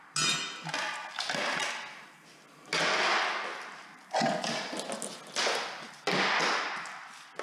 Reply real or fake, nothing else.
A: real